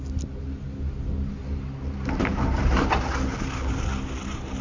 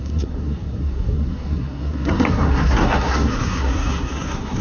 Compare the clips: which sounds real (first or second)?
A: first